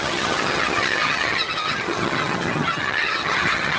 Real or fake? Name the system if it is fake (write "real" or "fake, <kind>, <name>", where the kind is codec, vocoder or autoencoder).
fake, vocoder, HiFi-GAN